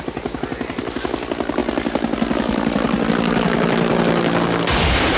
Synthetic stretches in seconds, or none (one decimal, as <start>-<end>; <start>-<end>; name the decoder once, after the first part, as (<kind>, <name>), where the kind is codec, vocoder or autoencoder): none